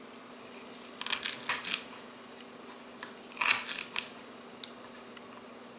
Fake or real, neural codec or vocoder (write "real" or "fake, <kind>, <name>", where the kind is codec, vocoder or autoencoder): real